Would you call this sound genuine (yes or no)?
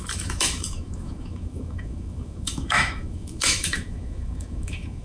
no